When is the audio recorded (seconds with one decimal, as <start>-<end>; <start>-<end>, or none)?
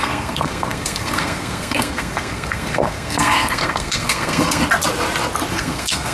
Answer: 4.6-5.5